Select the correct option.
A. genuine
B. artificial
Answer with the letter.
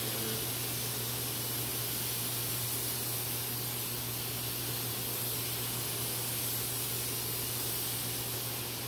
A